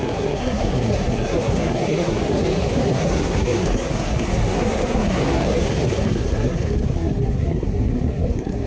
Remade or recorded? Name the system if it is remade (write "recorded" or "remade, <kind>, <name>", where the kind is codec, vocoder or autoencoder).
remade, codec, SNAC